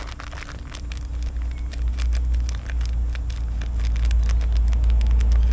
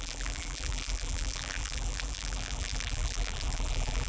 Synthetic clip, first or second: second